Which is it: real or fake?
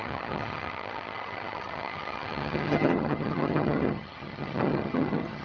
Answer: fake